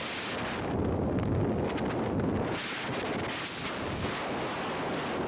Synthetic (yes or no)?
no